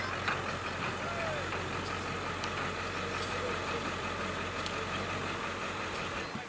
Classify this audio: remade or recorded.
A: recorded